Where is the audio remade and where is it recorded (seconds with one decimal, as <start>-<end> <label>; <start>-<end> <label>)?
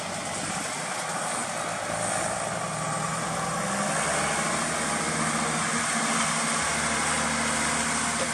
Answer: 0.0-8.3 recorded